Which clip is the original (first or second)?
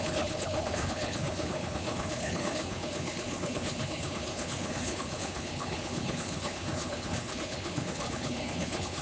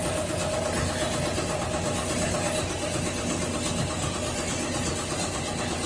second